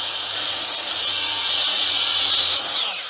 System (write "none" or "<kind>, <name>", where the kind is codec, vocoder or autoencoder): vocoder, Vocos